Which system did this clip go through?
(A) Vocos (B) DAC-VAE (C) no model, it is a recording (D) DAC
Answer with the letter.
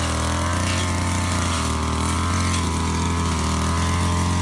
C